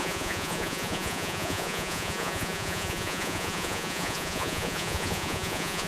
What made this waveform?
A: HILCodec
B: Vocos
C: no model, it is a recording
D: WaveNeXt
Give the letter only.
B